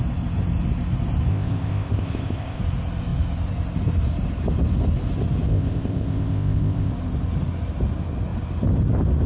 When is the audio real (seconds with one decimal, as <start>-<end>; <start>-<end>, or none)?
0.0-1.3; 2.6-5.5; 6.9-9.3